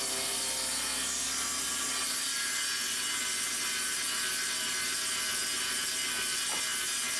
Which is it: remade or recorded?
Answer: recorded